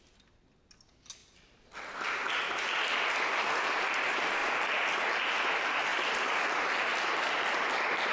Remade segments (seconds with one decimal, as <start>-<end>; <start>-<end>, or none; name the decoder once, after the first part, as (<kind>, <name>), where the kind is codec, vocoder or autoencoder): 5.9-6.6 (vocoder, BigVGAN v2)